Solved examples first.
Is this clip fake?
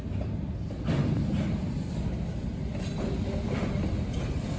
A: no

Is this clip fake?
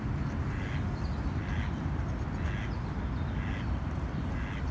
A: no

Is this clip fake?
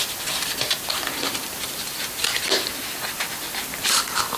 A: yes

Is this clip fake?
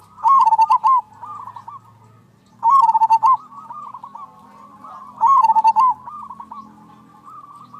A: no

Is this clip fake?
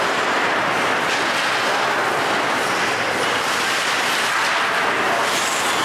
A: no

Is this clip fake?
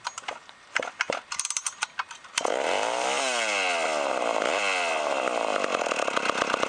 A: no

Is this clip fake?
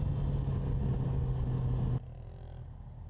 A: no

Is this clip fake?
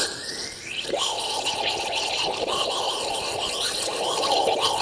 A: no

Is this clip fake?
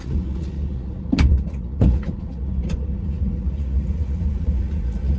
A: yes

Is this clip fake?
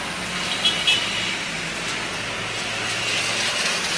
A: no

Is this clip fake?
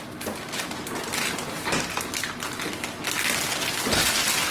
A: no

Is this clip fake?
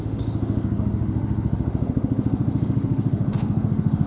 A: yes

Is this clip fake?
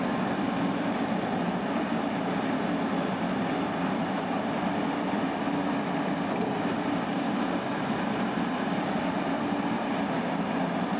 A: no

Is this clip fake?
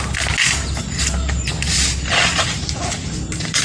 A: no